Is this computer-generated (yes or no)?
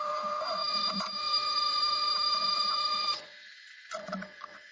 yes